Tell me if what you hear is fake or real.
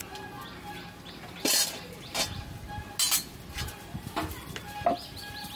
real